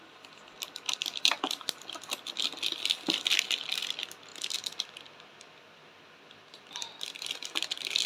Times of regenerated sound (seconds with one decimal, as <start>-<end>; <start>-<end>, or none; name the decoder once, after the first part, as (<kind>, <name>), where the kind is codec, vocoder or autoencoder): none